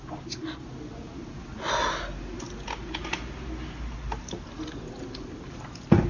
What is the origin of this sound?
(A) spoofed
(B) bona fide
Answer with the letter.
B